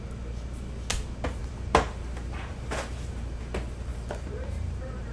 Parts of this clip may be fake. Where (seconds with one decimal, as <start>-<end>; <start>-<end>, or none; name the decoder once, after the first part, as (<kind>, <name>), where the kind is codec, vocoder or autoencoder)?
1.4-3.4 (vocoder, BigVGAN v2); 3.9-5.1